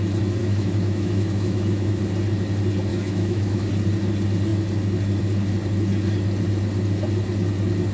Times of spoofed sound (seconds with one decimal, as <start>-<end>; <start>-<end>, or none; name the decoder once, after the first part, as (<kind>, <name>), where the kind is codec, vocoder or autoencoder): 0.4-2.0 (autoencoder, DAC-VAE); 2.9-3.7